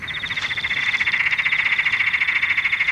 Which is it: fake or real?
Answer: real